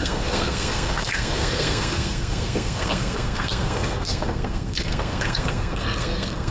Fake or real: fake